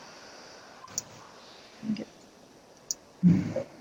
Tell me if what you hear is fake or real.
real